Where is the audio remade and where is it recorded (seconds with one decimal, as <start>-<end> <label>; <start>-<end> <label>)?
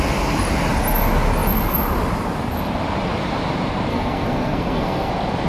0.0-3.9 recorded; 3.9-5.1 remade; 5.1-5.5 recorded